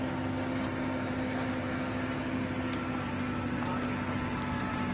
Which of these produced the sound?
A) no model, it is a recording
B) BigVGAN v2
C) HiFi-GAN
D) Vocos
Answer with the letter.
A